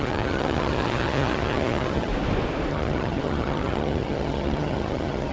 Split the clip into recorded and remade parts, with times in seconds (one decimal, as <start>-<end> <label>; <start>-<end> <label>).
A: 0.0-2.1 remade; 2.1-2.7 recorded; 2.7-5.3 remade